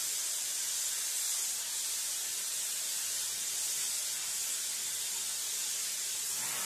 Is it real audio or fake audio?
real